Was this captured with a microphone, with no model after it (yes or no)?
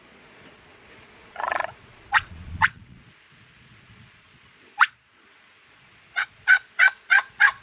no